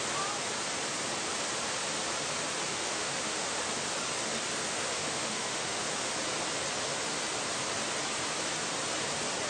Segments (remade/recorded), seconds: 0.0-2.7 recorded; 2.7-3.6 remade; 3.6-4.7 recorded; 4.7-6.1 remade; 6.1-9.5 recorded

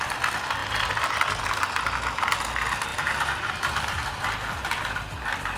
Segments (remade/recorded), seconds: 0.0-2.9 recorded; 2.9-3.7 remade; 3.7-5.6 recorded

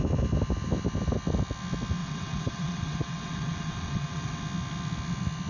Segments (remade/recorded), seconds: 0.0-2.0 recorded; 2.0-4.4 remade; 4.4-5.5 recorded

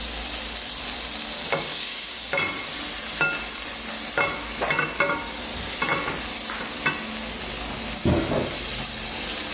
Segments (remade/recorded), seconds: 0.0-1.7 recorded; 1.7-2.3 remade; 2.3-9.5 recorded

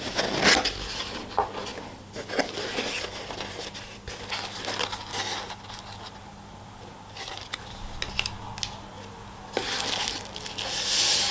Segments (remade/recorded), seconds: 0.0-11.3 recorded

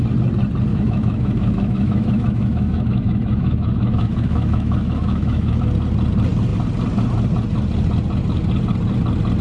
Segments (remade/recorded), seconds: 0.0-0.7 recorded; 0.7-5.6 remade; 5.6-9.4 recorded